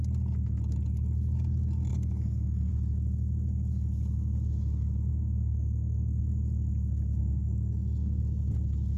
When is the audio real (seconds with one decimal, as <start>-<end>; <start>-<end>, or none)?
0.0-1.9; 2.7-5.1; 6.2-7.2; 8.2-9.0